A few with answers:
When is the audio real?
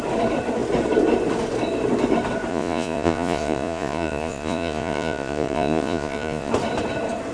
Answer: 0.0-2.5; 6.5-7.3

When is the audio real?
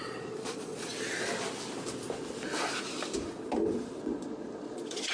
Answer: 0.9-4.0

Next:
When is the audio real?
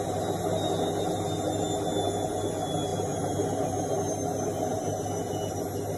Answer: 0.0-6.0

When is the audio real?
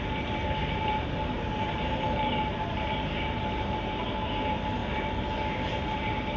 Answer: 4.8-5.8